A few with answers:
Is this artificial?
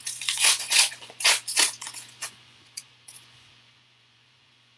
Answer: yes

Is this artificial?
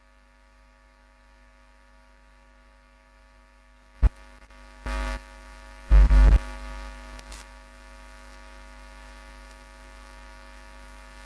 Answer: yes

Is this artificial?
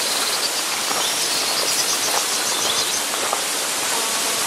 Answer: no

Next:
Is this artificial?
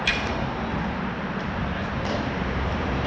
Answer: yes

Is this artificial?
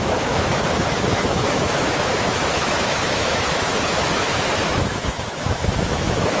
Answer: yes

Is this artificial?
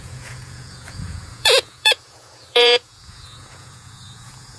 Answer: yes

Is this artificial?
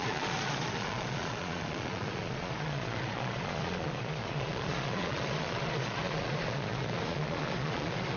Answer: yes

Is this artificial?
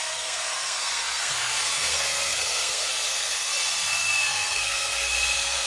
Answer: yes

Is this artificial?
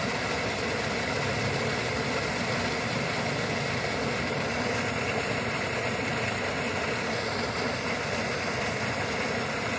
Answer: no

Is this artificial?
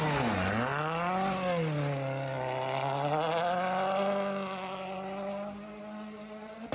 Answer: no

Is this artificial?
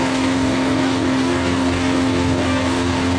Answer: yes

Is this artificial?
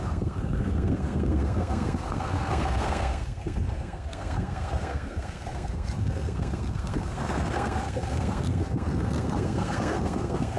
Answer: yes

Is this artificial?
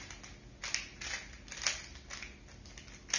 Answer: no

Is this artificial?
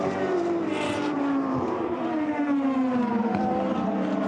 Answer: yes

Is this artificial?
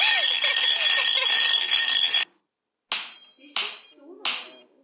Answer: no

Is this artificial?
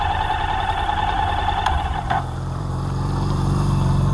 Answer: yes